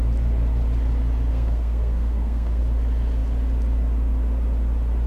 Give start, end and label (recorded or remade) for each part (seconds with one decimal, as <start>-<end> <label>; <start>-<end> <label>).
0.0-1.3 recorded; 1.3-2.6 remade; 2.6-5.1 recorded